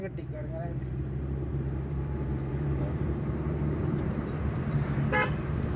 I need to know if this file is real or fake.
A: fake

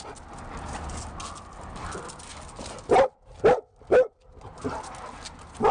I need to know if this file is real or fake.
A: real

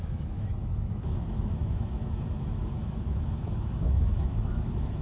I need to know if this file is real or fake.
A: fake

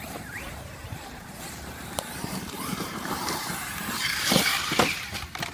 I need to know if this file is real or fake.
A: fake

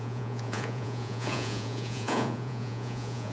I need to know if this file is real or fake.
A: fake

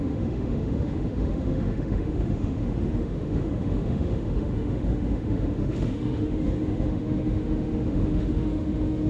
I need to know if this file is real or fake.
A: fake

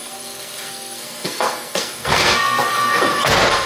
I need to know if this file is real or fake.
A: fake